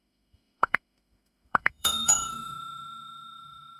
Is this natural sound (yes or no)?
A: no